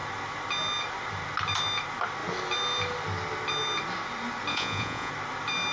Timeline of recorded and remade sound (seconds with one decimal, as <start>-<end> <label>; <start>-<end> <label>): 0.0-4.5 recorded; 4.5-5.1 remade; 5.1-5.7 recorded